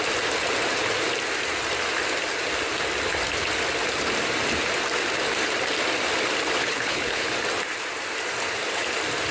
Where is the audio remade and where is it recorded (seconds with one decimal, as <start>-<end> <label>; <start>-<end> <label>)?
0.0-6.6 recorded; 6.6-7.3 remade; 7.3-9.3 recorded